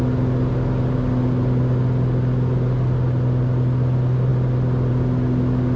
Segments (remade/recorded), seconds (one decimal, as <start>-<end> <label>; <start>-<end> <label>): 0.0-5.8 recorded